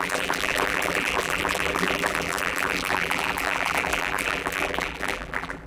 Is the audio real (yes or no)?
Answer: no